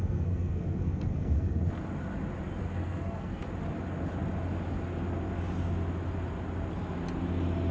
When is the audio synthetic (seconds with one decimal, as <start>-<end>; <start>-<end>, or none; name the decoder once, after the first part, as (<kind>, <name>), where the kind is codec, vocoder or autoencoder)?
0.0-1.6 (codec, SNAC); 2.6-3.4